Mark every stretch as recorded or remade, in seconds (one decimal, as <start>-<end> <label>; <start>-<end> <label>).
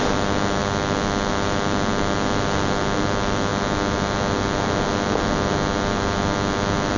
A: 0.0-7.0 recorded